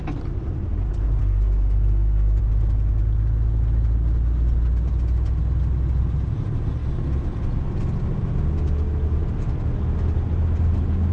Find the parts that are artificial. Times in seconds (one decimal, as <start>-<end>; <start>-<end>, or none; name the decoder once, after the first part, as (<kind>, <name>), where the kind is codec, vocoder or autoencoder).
1.2-2.4 (codec, SNAC)